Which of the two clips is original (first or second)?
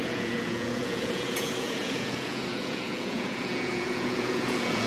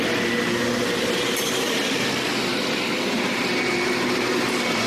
second